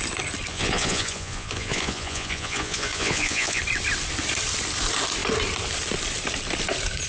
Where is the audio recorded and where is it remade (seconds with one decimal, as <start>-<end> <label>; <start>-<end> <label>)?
0.0-0.5 recorded; 0.5-3.6 remade; 3.6-7.1 recorded